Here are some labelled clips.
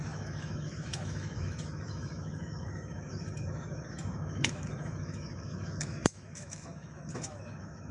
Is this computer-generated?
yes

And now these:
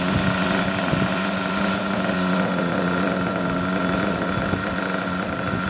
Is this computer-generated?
no